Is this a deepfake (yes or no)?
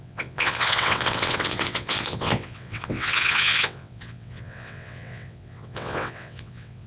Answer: yes